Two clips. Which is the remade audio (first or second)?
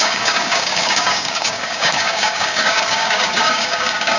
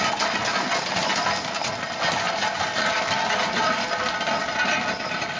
first